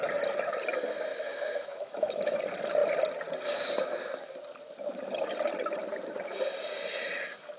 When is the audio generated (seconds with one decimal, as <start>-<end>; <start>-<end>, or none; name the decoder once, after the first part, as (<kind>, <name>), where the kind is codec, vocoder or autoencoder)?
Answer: 1.1-2.4 (autoencoder, DAC-VAE)